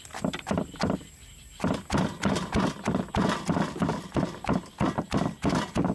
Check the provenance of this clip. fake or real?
real